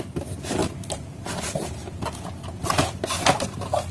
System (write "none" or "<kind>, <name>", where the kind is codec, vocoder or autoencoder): none